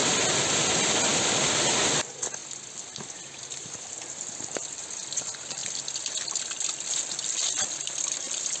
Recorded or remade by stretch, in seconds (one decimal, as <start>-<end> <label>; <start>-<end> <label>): 0.0-8.6 recorded